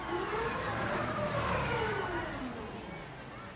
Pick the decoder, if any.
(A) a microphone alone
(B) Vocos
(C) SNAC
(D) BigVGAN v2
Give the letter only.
A